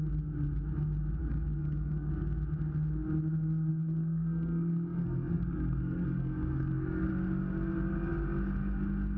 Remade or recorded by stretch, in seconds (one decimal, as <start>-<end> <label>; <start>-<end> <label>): 0.0-1.2 recorded; 1.2-2.1 remade; 2.1-3.7 recorded; 3.7-7.1 remade; 7.1-9.2 recorded

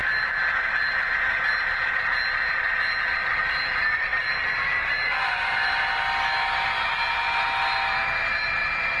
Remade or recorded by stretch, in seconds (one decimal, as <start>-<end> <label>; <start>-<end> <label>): 0.0-9.0 recorded

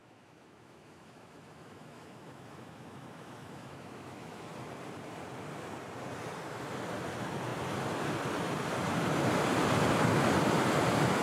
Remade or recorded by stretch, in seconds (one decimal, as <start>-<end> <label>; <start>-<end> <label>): 0.0-4.5 remade; 4.5-11.2 recorded

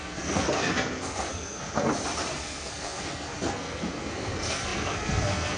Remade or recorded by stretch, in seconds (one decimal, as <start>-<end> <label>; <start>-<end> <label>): 0.0-1.9 remade; 1.9-2.4 recorded; 2.4-5.6 remade